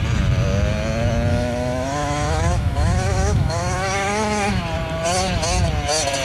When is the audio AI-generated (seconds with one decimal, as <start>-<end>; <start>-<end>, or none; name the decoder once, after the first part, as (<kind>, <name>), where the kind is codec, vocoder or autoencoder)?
1.3-4.6 (autoencoder, DAC-VAE)